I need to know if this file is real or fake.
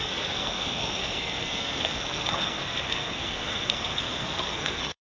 fake